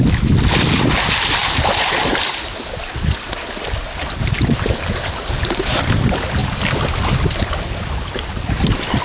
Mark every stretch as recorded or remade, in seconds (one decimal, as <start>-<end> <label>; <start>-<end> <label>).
0.0-9.0 recorded